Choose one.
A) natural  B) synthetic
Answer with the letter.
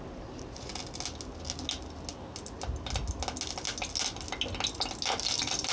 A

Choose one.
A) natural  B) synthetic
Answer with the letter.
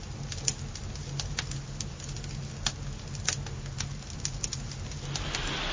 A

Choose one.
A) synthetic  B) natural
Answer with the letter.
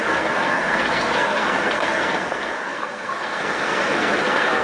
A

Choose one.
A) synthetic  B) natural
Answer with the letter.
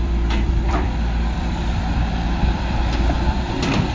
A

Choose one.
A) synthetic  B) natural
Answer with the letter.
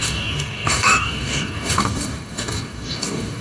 A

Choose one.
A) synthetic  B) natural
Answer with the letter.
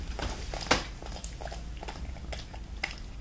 B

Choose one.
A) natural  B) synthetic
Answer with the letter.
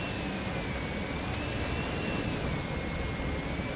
A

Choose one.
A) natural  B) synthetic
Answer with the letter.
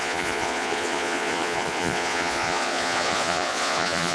B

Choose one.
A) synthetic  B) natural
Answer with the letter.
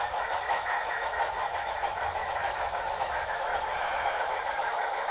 A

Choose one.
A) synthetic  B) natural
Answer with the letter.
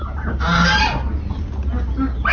B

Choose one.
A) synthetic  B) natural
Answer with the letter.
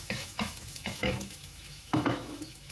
A